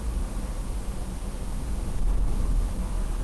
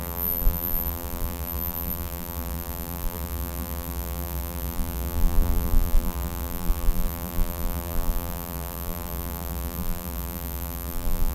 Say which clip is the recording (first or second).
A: first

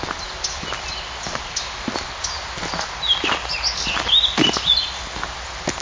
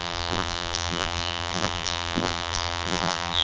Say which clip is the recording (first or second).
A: first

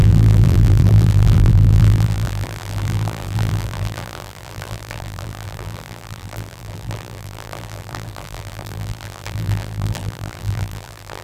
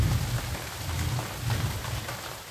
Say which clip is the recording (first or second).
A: second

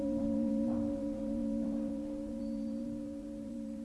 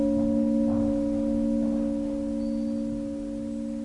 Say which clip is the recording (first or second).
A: second